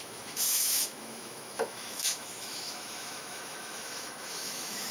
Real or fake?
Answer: fake